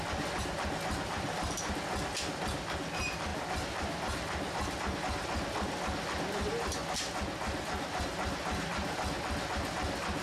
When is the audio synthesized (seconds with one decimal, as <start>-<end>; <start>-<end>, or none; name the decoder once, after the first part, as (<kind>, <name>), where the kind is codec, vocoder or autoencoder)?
none